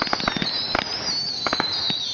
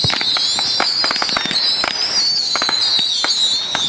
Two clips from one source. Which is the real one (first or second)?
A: second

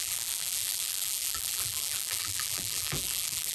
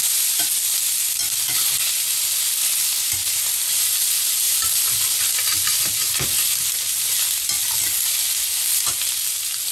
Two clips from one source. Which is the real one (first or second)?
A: second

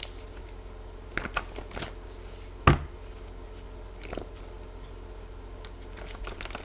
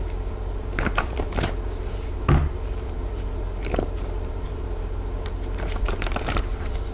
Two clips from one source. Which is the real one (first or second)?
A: first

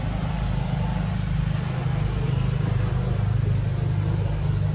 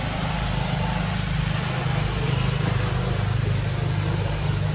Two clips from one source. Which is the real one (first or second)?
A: first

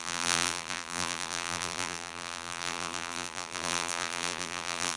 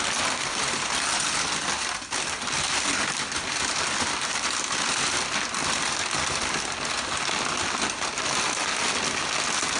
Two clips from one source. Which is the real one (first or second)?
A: second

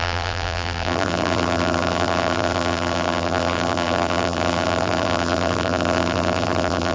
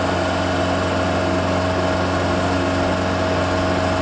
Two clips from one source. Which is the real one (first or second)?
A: second